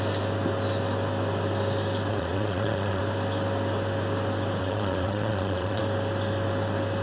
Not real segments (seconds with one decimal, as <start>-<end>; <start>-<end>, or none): 2.1-3.0; 4.6-5.8